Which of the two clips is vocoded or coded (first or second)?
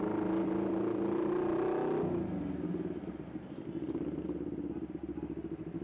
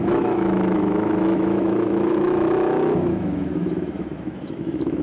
second